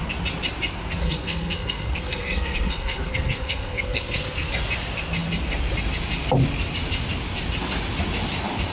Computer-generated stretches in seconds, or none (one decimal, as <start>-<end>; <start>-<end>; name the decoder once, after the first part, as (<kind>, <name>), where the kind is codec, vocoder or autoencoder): 1.0-4.5 (codec, SNAC)